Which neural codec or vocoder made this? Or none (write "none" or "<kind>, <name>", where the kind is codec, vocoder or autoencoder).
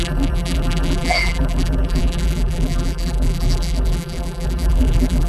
vocoder, BigVGAN v2